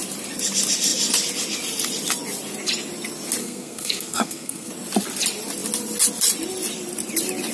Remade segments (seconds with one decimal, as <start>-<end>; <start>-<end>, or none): 3.4-4.7